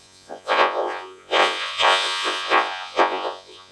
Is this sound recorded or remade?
remade